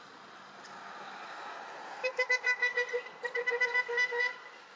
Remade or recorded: recorded